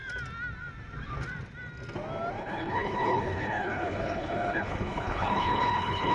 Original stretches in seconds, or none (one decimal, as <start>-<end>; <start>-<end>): 0.0-2.4